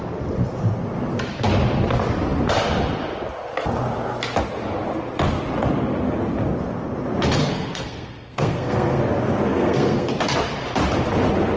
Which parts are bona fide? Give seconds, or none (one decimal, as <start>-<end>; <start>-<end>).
0.0-7.4; 9.0-9.5; 10.1-11.6